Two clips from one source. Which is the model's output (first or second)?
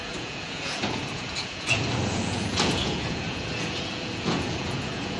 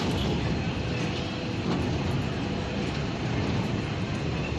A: first